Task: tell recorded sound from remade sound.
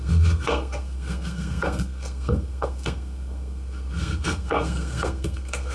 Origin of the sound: remade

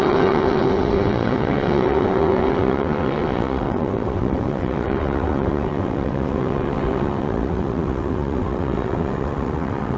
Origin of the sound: remade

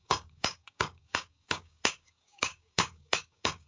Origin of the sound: remade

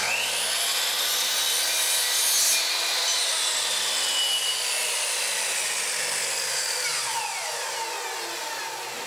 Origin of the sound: recorded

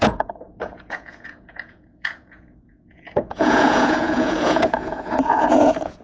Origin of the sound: remade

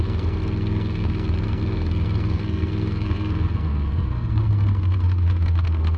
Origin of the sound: remade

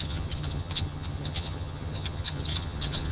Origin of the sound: remade